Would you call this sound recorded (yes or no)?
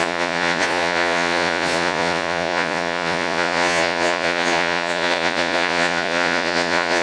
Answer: no